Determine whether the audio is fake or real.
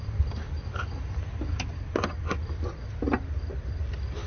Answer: real